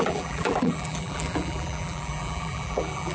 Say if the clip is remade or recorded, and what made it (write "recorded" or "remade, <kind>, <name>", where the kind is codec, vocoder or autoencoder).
remade, vocoder, BigVGAN v2